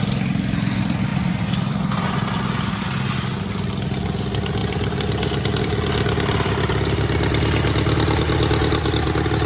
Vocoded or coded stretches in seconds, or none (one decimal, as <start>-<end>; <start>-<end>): none